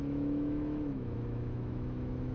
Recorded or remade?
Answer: remade